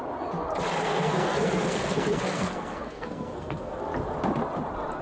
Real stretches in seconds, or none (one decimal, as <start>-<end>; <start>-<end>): 0.0-0.8; 3.8-5.0